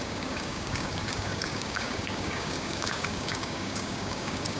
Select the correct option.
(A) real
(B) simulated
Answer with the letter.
B